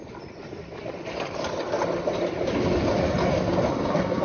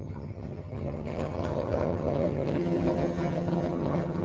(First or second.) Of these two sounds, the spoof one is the second